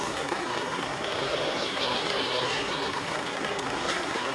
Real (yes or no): no